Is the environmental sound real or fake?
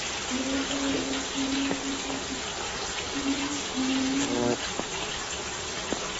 real